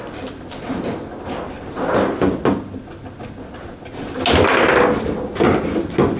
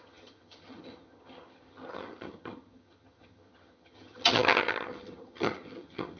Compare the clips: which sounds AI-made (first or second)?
second